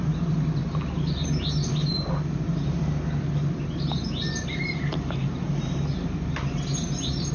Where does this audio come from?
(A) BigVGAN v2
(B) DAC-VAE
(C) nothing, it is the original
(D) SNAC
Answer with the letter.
C